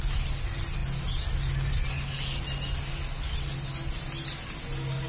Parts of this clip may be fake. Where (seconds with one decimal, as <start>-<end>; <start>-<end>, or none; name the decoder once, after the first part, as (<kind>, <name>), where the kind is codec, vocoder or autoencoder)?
none